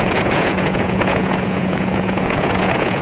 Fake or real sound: fake